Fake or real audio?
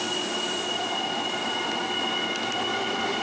real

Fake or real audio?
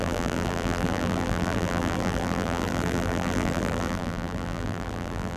fake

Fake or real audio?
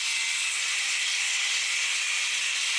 fake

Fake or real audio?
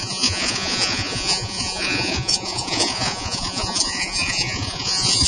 fake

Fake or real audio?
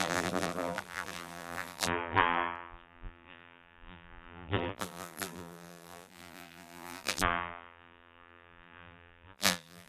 fake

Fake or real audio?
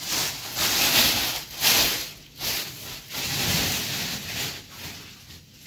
real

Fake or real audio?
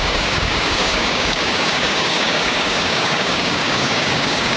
fake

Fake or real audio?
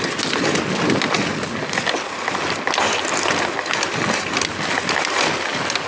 real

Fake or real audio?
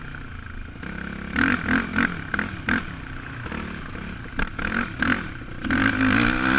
real